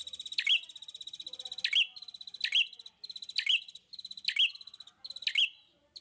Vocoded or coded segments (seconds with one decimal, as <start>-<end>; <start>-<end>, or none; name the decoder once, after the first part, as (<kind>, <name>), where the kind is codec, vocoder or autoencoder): none